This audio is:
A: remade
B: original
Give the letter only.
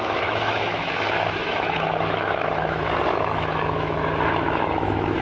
A